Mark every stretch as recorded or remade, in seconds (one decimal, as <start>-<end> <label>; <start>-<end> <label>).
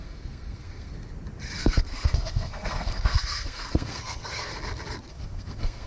0.0-0.9 remade; 0.9-1.6 recorded; 1.6-4.5 remade; 4.5-5.1 recorded; 5.1-5.9 remade